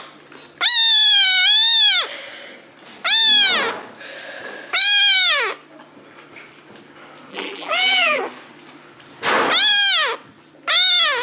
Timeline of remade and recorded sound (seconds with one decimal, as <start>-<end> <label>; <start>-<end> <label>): 0.0-7.3 recorded; 7.3-8.2 remade; 8.2-11.2 recorded